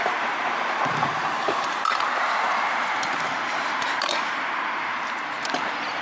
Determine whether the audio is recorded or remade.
remade